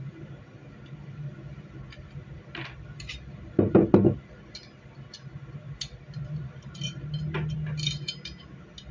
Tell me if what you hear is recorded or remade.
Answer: recorded